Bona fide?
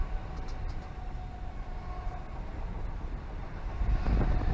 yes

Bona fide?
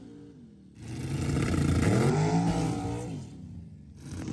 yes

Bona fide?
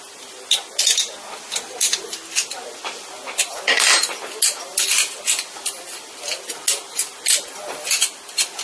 yes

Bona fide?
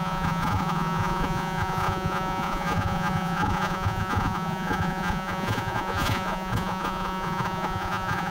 no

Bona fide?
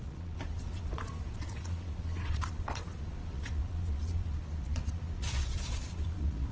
no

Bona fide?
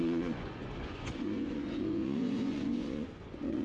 no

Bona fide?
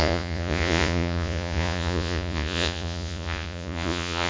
no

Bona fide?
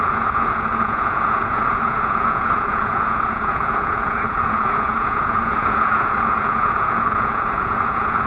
no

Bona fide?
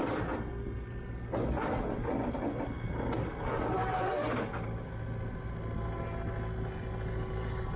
yes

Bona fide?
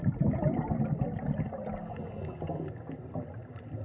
yes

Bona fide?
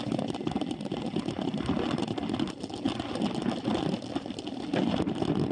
yes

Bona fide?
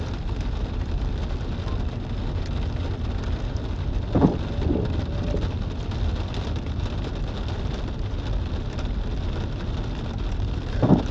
yes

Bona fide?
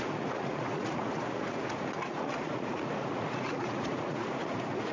no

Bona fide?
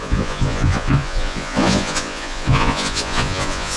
no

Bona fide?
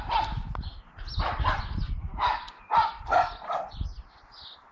yes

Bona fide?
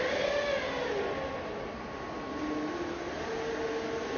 yes